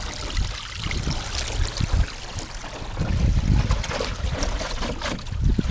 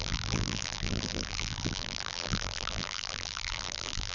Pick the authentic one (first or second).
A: first